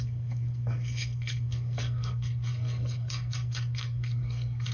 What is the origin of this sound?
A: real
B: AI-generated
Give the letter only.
B